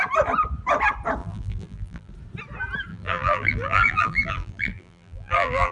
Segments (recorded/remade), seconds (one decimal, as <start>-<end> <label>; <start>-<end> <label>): 0.0-1.2 recorded; 1.2-2.1 remade; 2.1-2.9 recorded; 2.9-5.7 remade